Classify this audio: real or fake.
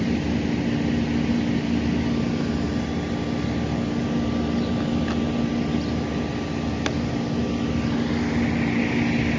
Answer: real